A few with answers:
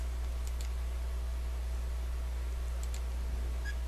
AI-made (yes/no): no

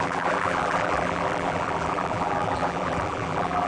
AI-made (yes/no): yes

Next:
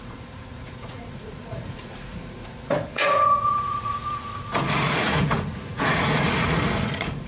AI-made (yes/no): yes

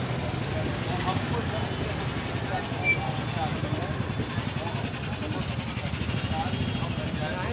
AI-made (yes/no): no